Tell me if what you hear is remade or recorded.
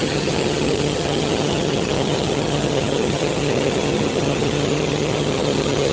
remade